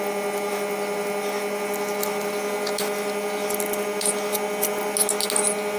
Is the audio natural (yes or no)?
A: yes